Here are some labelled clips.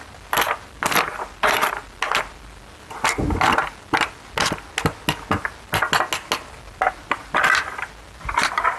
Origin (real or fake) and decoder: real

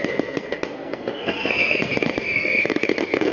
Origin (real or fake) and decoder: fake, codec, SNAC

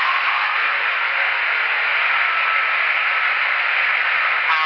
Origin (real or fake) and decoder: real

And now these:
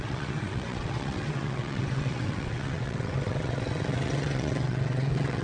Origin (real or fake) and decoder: fake, vocoder, WaveNeXt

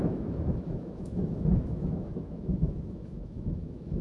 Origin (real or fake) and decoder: fake, autoencoder, DAC-VAE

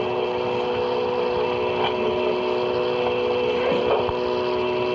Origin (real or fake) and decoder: real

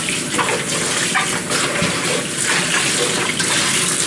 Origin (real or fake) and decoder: real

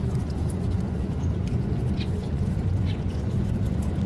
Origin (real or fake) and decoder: fake, vocoder, Vocos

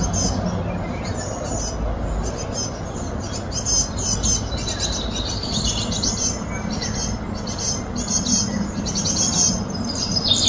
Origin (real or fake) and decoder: real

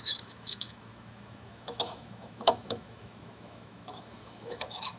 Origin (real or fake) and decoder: fake, autoencoder, DAC-VAE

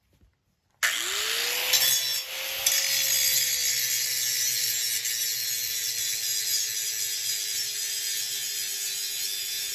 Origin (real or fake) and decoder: real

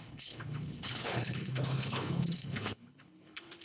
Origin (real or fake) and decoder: fake, codec, HILCodec